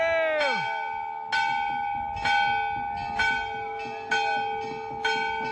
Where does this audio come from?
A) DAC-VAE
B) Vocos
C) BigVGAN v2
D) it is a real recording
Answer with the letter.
D